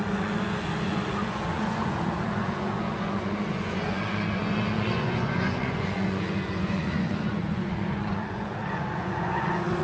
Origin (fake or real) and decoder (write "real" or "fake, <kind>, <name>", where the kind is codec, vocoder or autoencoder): fake, vocoder, Vocos